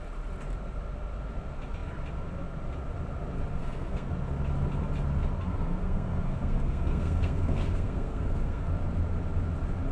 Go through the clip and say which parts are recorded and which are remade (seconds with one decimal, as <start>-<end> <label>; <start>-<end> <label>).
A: 0.0-3.6 recorded; 3.6-4.1 remade; 4.1-5.5 recorded; 5.5-8.7 remade; 8.7-9.9 recorded